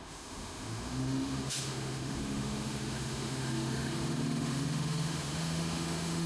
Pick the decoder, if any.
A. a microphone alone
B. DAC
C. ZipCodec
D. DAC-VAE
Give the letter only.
D